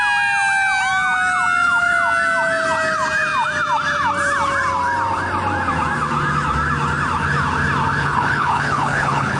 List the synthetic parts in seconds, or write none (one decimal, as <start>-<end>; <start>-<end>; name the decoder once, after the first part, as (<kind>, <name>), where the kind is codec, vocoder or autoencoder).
8.0-9.4 (codec, HILCodec)